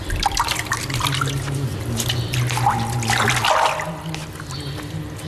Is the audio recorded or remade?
recorded